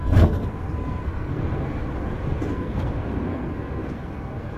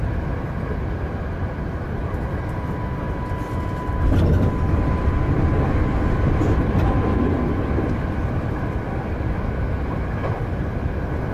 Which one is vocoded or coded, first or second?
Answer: first